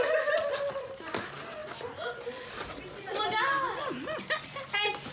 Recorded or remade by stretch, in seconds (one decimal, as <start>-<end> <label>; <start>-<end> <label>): 0.0-5.1 recorded